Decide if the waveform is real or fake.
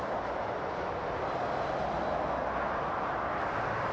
real